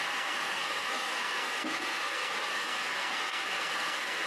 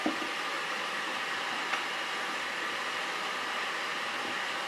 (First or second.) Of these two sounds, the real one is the second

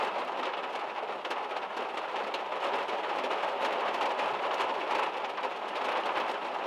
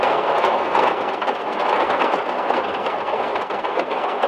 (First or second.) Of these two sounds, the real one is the first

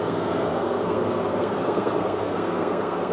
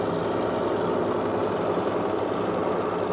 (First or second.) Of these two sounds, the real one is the second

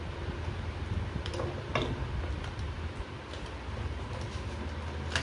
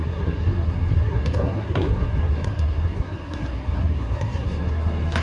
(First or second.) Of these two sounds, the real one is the first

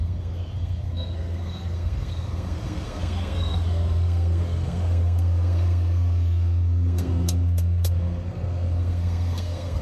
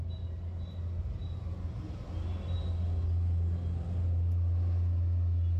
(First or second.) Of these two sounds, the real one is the second